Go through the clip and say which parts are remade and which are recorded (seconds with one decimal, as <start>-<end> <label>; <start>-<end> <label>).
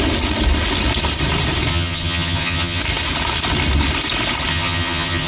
0.0-1.7 recorded; 1.7-2.8 remade; 2.8-4.5 recorded; 4.5-5.3 remade